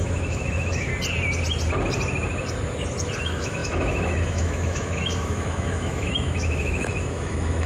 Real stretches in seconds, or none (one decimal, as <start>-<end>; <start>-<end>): 0.9-3.2